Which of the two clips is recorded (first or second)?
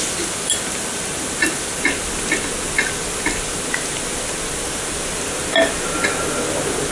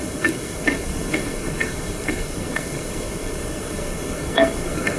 first